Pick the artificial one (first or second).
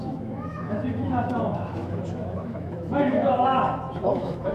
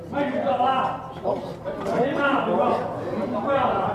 first